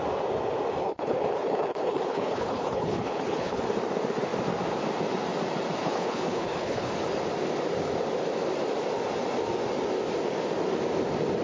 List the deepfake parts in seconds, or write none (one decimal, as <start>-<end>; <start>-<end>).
0.8-3.6; 5.8-6.9